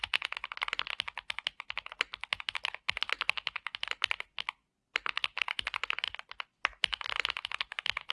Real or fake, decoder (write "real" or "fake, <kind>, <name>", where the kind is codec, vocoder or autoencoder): real